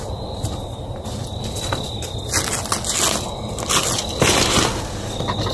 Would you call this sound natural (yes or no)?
yes